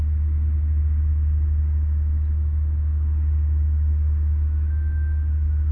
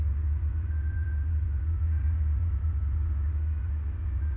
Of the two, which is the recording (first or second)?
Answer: first